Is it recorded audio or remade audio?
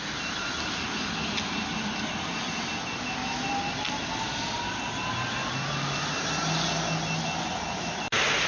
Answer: recorded